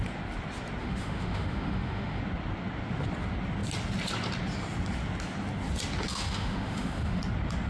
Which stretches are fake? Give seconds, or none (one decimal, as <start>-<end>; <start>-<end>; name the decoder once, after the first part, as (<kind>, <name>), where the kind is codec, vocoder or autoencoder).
0.8-2.2 (autoencoder, DAC-VAE); 6.1-7.2